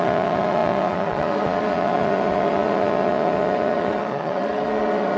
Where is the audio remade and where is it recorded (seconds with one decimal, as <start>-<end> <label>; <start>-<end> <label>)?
0.0-5.2 remade